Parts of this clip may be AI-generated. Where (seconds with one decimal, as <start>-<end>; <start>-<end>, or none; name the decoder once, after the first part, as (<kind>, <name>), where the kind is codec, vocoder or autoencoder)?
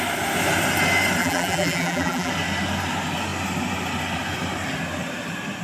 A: 1.2-2.3 (vocoder, BigVGAN v2)